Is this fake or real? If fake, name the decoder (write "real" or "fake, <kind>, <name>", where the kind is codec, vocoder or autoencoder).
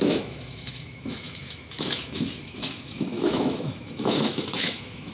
fake, autoencoder, DAC-VAE